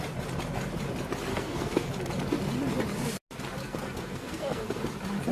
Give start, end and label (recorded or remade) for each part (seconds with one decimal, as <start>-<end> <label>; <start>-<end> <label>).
0.0-1.3 recorded; 1.3-1.9 remade; 1.9-3.6 recorded; 3.6-4.8 remade; 4.8-5.3 recorded